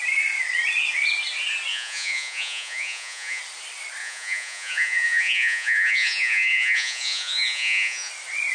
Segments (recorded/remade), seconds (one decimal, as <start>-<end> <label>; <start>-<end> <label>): 0.0-1.7 recorded; 1.7-3.4 remade; 3.4-4.0 recorded; 4.0-8.1 remade; 8.1-8.5 recorded